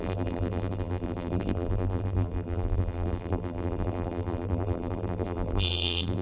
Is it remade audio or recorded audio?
remade